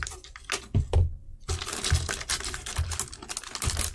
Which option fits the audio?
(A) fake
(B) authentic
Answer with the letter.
B